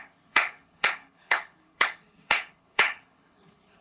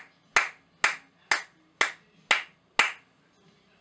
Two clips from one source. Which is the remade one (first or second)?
first